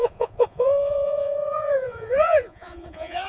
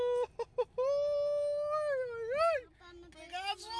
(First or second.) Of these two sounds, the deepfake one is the first